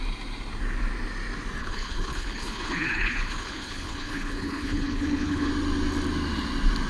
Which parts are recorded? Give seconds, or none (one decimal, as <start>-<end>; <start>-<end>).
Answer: 0.0-1.6; 5.5-6.9